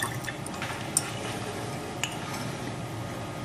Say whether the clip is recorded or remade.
recorded